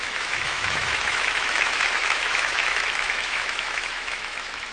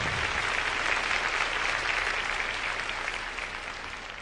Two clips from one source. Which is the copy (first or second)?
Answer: first